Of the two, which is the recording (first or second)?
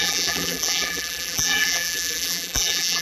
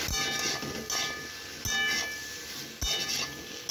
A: second